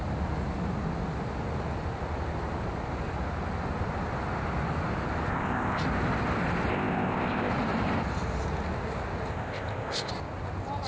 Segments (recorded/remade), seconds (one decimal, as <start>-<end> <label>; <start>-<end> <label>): 0.0-5.3 recorded; 5.3-5.8 remade; 5.8-6.7 recorded; 6.7-7.5 remade; 7.5-9.3 recorded; 9.3-10.1 remade; 10.1-10.9 recorded